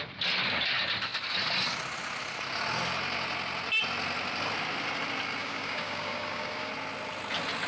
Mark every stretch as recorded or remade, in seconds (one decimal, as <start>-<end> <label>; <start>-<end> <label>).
0.0-5.4 recorded; 5.4-6.7 remade; 6.7-7.7 recorded